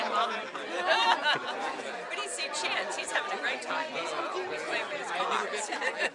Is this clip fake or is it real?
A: real